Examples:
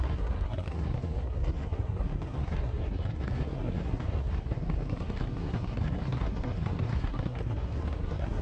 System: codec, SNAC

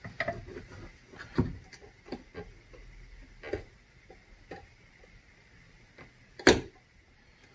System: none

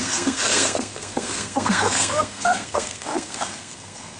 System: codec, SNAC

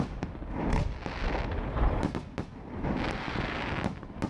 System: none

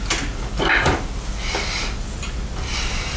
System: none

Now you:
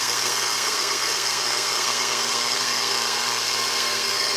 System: codec, SNAC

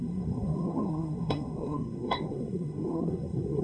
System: codec, SNAC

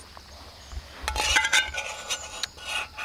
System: none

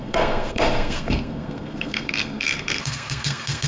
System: codec, SNAC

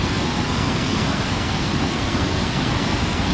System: codec, SNAC